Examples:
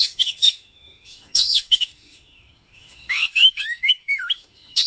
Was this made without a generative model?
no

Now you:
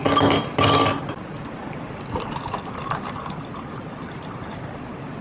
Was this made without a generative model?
yes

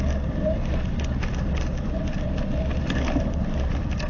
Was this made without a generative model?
yes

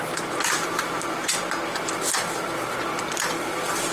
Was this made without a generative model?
no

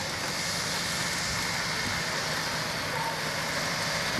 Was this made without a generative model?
yes